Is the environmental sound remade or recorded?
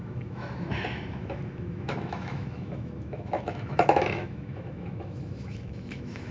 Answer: remade